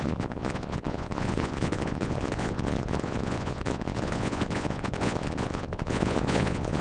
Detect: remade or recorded remade